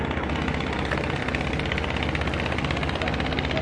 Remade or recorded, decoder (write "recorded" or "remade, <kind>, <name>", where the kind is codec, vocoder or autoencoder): recorded